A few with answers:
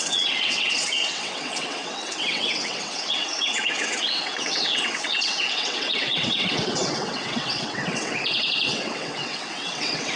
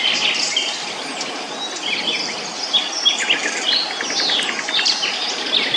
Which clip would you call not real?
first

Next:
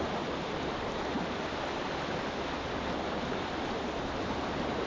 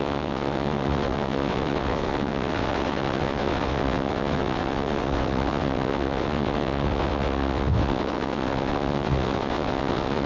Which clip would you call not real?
second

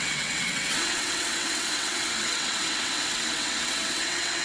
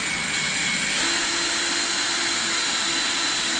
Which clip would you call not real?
first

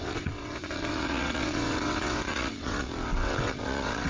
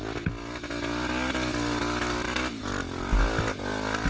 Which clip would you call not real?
first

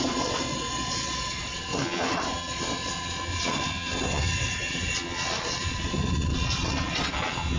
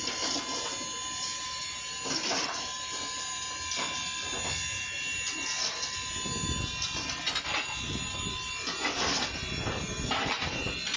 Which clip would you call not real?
first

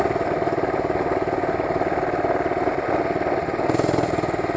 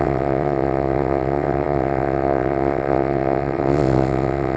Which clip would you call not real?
second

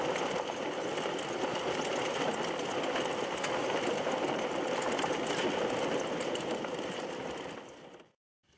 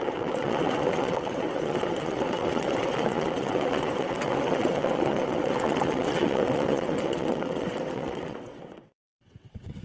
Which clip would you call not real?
second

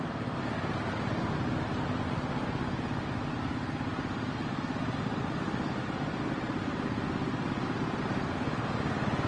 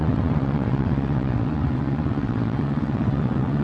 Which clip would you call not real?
second